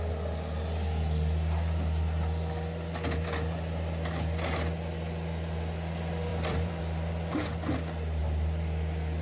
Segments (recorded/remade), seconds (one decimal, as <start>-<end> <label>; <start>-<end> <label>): 0.0-6.3 recorded; 6.3-6.8 remade; 6.8-8.2 recorded; 8.2-9.2 remade